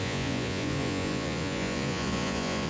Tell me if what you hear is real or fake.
fake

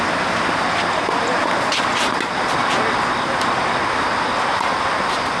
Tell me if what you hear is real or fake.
real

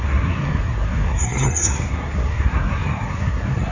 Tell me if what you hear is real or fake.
fake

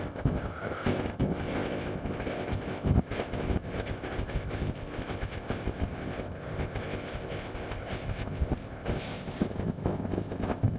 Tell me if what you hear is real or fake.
fake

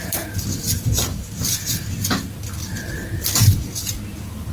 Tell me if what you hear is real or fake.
real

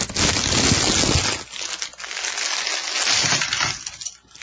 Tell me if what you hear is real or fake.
real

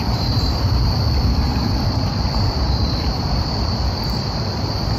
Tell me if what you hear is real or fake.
fake